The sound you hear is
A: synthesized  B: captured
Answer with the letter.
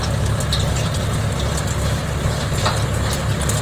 B